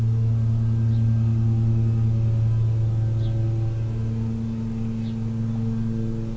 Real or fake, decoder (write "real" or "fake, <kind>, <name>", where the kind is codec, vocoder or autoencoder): real